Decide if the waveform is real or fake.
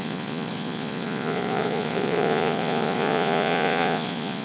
fake